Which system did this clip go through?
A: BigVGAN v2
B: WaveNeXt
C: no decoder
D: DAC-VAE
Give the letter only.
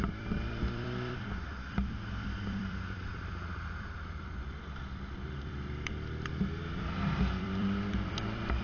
A